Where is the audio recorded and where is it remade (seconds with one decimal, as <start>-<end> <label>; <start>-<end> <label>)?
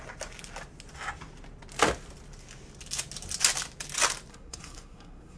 0.0-4.3 recorded; 4.3-5.4 remade